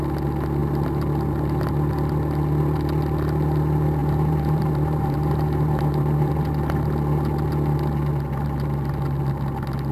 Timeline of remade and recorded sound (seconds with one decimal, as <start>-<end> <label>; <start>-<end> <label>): 0.0-4.0 recorded; 4.0-6.3 remade; 6.3-9.9 recorded